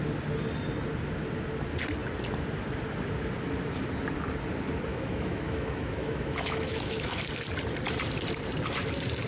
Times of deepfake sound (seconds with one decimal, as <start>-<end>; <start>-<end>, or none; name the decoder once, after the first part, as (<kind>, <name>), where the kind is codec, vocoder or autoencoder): 4.9-7.2 (autoencoder, DAC-VAE)

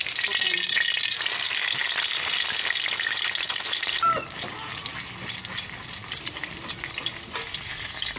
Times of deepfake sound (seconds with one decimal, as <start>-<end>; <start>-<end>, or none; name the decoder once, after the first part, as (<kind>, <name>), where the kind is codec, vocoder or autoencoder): none